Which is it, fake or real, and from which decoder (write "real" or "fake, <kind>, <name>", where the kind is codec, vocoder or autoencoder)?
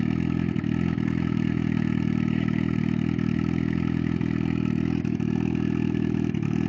fake, autoencoder, DAC-VAE